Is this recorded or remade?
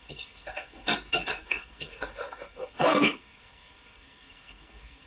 remade